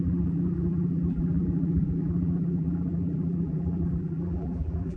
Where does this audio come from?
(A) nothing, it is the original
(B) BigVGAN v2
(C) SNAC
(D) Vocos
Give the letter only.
B